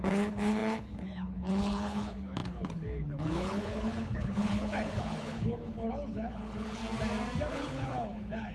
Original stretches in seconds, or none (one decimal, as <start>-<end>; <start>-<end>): 6.8-7.5